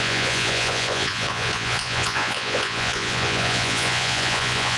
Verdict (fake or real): fake